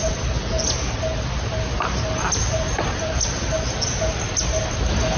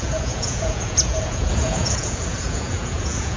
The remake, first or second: second